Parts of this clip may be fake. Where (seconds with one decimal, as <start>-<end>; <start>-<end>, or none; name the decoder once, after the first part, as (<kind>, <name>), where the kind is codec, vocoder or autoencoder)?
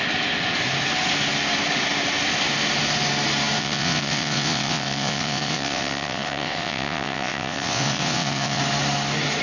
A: 3.6-8.6 (vocoder, WaveNeXt)